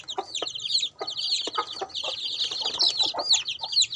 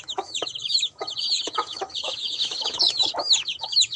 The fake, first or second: second